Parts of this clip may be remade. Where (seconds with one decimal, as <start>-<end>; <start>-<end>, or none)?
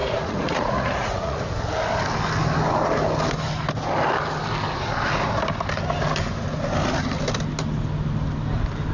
0.0-1.5